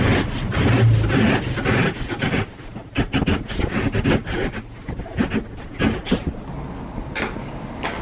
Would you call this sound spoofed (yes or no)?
no